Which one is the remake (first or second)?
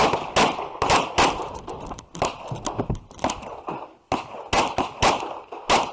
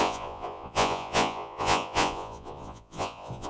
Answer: second